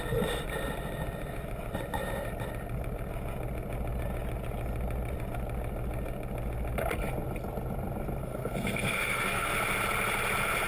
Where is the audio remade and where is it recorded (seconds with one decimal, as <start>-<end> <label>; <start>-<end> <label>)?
0.0-8.2 recorded; 8.2-9.5 remade; 9.5-10.7 recorded